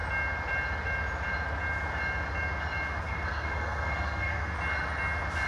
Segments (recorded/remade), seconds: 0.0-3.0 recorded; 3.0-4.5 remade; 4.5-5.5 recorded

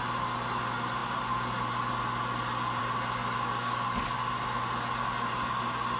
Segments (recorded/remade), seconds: 0.0-6.0 recorded

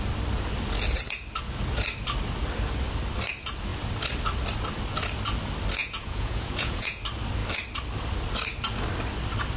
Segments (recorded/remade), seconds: 0.0-5.8 recorded; 5.8-7.0 remade; 7.0-9.6 recorded

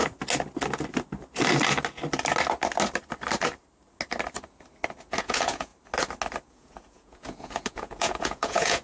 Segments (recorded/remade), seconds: 0.0-5.2 recorded; 5.2-5.7 remade; 5.7-6.5 recorded; 6.5-8.8 remade

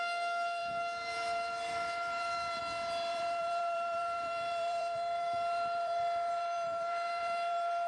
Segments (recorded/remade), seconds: 0.0-0.6 recorded; 0.6-2.6 remade; 2.6-3.1 recorded; 3.1-7.9 remade